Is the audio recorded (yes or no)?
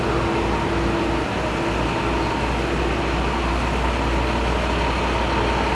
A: yes